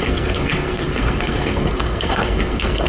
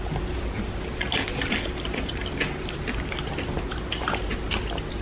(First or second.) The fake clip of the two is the first